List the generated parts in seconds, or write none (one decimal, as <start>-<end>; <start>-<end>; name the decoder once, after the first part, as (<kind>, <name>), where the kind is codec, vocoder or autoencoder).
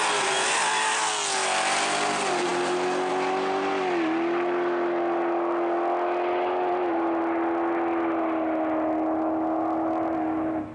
none